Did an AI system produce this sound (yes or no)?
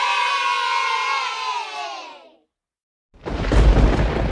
no